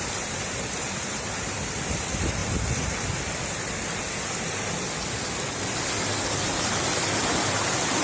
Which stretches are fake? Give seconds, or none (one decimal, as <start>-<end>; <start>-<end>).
0.0-2.4; 6.7-8.0